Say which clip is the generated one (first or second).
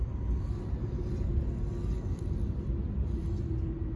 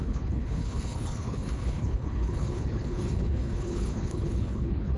second